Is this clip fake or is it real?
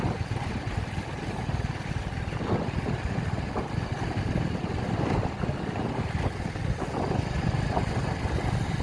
real